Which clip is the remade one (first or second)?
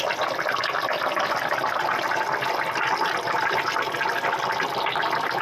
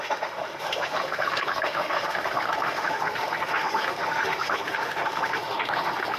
second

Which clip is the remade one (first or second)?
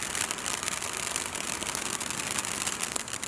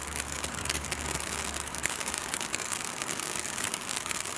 second